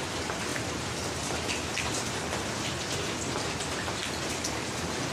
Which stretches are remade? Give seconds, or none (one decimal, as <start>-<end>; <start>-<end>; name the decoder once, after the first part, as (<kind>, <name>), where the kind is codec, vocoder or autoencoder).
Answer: 0.5-3.6 (vocoder, BigVGAN v2)